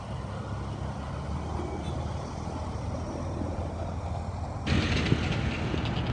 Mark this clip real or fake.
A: real